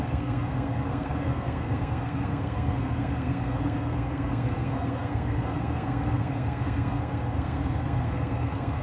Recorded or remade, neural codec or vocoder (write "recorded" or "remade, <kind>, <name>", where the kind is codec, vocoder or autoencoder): remade, codec, SNAC